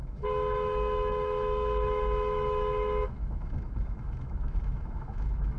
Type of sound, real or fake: fake